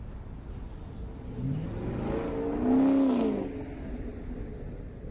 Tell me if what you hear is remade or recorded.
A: recorded